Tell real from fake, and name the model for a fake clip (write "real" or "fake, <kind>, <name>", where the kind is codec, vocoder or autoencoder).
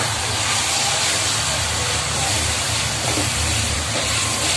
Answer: fake, vocoder, BigVGAN v2